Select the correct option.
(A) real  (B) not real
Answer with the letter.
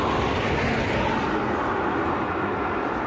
A